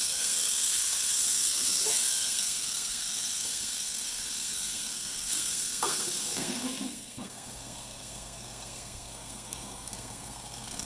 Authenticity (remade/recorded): remade